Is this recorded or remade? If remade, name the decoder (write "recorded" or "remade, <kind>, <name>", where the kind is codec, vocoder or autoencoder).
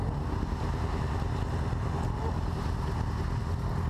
recorded